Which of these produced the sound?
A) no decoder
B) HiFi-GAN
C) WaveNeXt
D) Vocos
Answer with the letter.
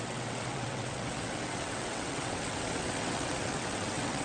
C